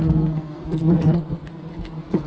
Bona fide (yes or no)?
no